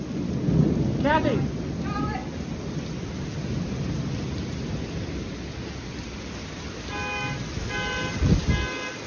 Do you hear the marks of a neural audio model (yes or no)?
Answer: no